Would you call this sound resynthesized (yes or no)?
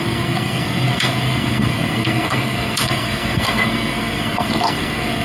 yes